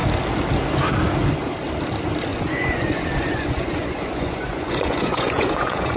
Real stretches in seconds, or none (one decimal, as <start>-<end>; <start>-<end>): 0.0-2.3